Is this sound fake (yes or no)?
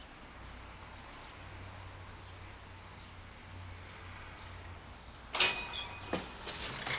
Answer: no